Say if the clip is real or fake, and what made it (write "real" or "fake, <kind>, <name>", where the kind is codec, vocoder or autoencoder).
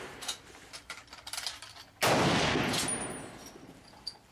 real